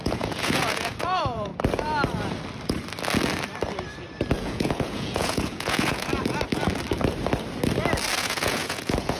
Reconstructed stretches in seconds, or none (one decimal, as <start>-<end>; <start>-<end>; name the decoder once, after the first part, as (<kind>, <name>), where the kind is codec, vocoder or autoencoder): 0.0-1.5 (vocoder, Vocos); 4.4-6.1; 8.2-9.2